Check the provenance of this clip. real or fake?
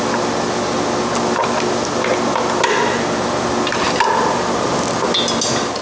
real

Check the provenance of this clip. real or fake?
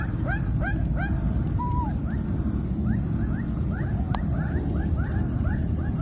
real